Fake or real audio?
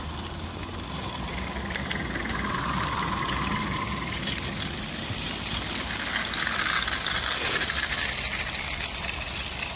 real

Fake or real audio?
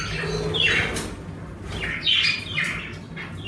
real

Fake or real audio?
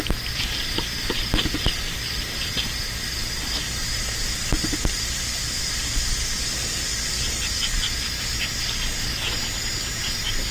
real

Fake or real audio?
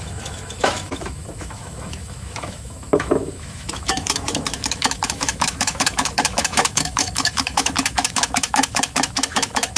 fake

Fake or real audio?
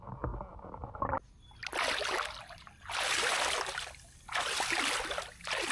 real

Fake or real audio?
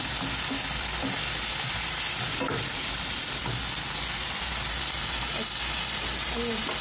real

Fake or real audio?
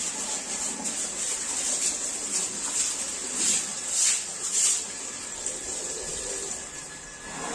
real